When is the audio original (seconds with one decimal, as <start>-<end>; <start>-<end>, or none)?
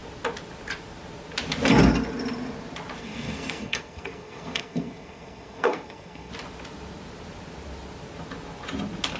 0.0-3.0; 6.3-9.2